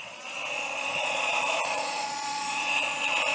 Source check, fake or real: fake